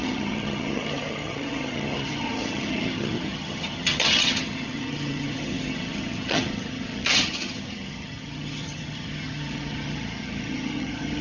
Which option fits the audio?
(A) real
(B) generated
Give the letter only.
B